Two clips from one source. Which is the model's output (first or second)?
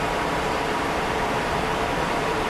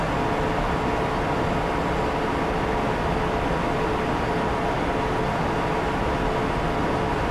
first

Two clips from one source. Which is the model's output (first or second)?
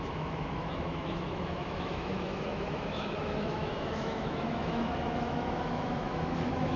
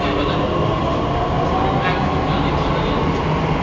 first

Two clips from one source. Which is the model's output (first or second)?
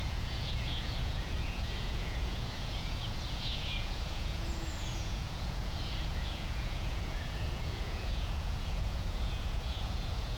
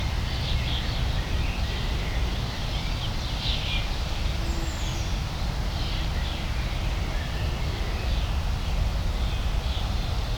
first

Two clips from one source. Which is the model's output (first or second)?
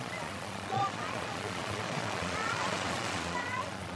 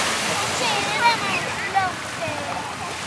first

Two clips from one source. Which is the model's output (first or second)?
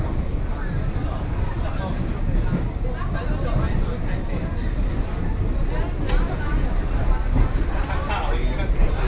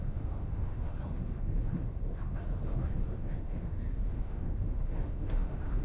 second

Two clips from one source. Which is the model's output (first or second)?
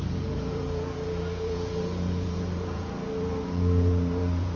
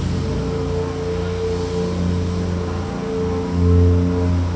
first